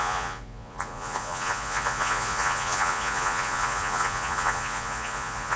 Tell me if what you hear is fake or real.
fake